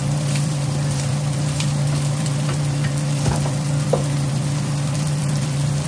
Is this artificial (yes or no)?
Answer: yes